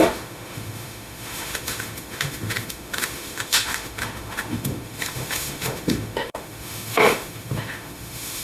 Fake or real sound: fake